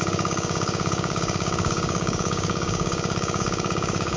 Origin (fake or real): fake